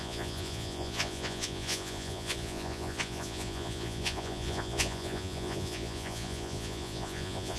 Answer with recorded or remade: remade